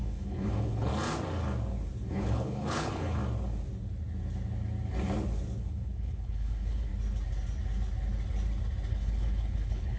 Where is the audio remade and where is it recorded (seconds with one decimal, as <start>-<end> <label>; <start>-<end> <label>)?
0.0-0.9 remade; 0.9-2.1 recorded; 2.1-3.2 remade; 3.2-5.6 recorded; 5.6-6.9 remade; 6.9-8.9 recorded; 8.9-10.0 remade